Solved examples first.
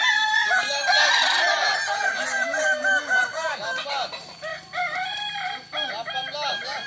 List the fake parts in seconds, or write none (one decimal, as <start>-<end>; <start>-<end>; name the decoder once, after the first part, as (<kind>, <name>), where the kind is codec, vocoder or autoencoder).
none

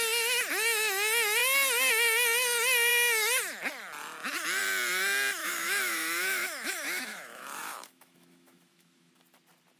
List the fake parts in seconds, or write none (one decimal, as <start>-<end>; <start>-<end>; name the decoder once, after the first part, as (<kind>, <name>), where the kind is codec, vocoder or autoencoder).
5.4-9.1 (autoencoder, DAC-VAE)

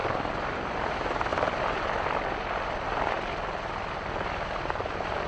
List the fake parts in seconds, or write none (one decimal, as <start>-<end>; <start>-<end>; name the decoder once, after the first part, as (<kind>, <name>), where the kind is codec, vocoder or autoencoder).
0.0-5.3 (vocoder, BigVGAN v2)